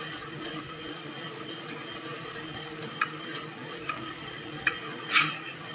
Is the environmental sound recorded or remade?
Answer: remade